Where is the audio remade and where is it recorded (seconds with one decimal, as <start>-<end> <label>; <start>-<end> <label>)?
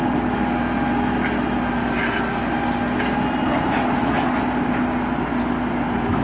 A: 0.0-6.2 recorded